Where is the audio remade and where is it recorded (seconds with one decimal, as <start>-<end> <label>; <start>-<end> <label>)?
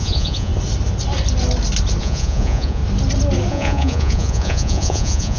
0.0-0.5 remade; 0.5-2.0 recorded; 2.0-2.8 remade; 2.8-3.5 recorded; 3.5-5.4 remade